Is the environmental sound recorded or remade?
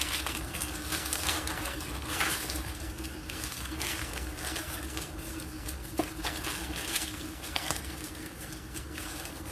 remade